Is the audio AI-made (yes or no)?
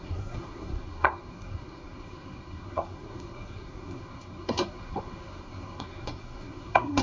yes